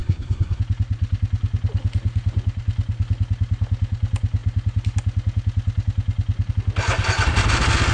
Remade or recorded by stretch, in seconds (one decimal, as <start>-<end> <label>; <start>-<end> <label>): 0.0-0.6 remade; 0.6-7.9 recorded